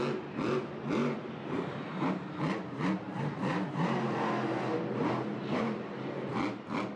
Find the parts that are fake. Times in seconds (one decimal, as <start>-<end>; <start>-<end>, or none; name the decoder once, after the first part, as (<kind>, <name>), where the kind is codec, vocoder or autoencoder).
1.0-4.7 (vocoder, BigVGAN v2); 5.3-6.3